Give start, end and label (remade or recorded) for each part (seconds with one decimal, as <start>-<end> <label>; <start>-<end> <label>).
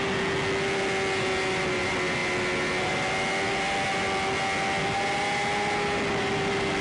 0.0-6.8 recorded